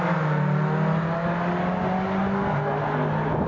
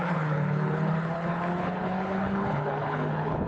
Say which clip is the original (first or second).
first